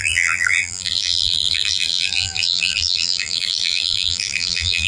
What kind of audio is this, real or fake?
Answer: fake